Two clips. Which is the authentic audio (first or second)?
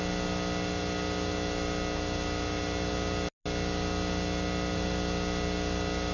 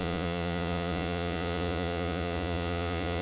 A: first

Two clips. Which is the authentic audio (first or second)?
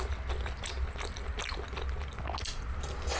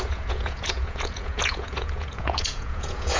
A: first